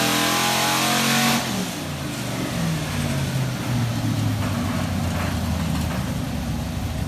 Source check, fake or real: real